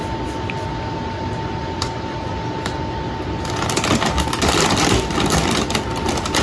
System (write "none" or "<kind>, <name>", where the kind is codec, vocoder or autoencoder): none